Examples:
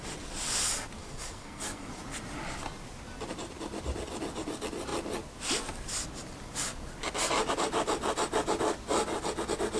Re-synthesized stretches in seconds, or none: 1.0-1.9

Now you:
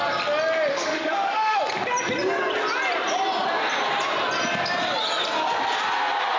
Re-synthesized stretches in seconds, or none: 0.7-1.6

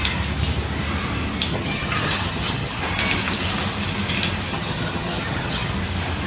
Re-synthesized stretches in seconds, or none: 1.5-2.8; 4.5-5.7

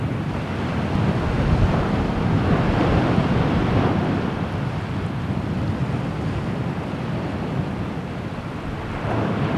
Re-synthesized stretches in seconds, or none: 2.8-3.7; 5.8-7.3

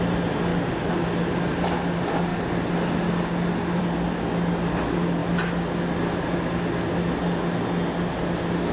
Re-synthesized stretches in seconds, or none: none